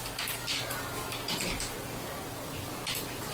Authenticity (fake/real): real